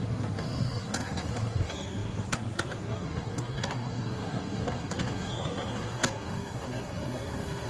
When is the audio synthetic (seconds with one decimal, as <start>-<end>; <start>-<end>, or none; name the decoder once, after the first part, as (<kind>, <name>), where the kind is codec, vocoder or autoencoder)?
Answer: 0.0-7.7 (codec, SNAC)